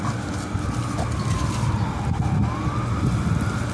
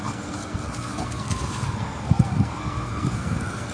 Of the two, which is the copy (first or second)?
second